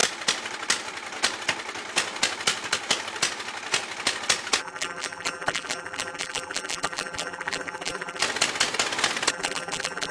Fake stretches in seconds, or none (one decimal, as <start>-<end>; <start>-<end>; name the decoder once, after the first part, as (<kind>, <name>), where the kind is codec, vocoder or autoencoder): 4.6-8.2 (vocoder, BigVGAN v2); 9.3-10.1